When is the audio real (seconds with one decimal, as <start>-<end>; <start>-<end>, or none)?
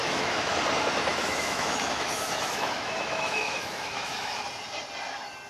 0.6-1.1; 4.4-5.5